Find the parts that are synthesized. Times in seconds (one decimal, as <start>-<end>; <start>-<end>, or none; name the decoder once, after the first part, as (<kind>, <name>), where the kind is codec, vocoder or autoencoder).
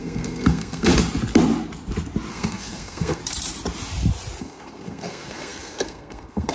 0.0-0.9 (codec, SNAC); 2.3-3.2; 4.4-6.5